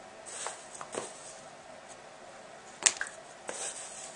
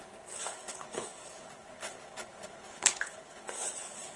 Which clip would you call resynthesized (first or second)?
second